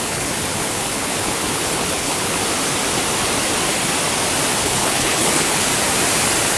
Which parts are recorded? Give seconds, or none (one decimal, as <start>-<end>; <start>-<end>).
2.4-4.6; 5.7-6.6